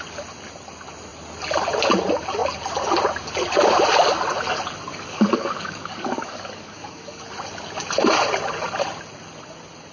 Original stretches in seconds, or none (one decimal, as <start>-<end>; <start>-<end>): 0.0-4.9; 7.2-9.9